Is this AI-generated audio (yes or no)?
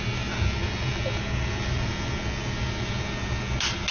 no